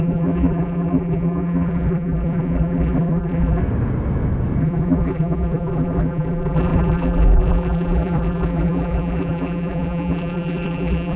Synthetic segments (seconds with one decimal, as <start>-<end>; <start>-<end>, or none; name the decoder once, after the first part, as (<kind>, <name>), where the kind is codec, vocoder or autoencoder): 0.0-3.6 (vocoder, BigVGAN v2); 4.6-11.2